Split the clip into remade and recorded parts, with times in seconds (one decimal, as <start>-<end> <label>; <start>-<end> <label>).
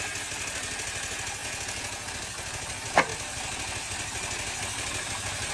0.0-1.4 recorded; 1.4-2.1 remade; 2.1-5.5 recorded